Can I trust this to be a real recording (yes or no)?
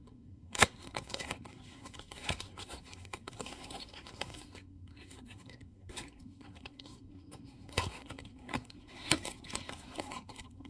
no